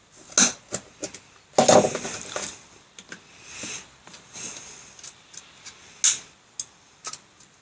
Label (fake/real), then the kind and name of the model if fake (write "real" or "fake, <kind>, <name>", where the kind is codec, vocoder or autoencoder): real